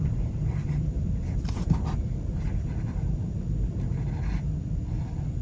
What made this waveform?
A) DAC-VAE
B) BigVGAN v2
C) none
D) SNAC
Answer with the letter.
C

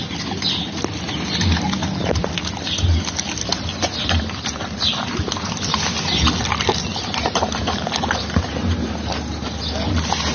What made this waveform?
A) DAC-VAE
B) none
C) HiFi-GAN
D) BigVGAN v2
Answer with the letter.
B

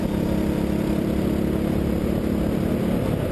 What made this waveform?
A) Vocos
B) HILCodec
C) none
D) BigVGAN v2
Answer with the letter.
D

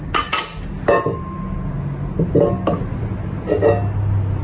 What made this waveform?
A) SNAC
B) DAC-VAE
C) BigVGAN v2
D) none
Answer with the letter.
D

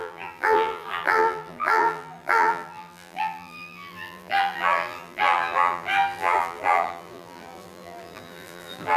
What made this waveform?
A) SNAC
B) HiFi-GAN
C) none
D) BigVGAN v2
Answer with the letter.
D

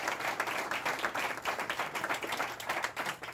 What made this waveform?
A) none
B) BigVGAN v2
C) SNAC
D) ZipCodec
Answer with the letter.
B